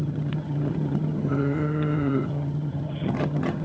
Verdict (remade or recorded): remade